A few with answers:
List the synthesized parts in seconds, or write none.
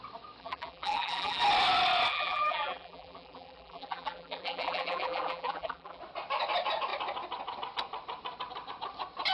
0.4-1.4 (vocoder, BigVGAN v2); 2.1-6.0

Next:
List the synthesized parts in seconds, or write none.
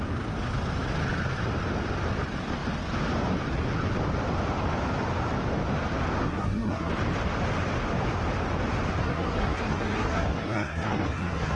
6.2-6.9 (codec, SNAC); 9.0-11.6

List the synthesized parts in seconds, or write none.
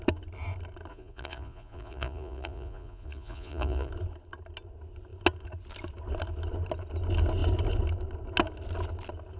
0.9-3.9 (vocoder, Vocos)